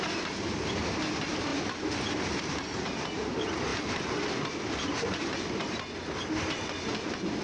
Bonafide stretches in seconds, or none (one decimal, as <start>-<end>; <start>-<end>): 0.0-7.4